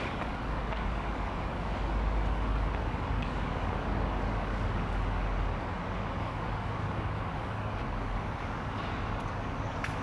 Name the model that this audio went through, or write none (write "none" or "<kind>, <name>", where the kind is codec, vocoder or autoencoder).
codec, DAC